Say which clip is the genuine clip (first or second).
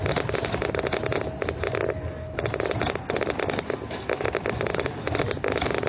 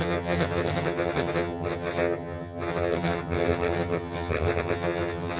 first